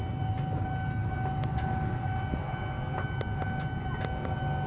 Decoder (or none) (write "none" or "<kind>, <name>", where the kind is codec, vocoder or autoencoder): none